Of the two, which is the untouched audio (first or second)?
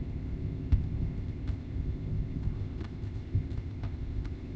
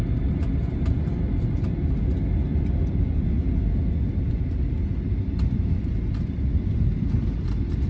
second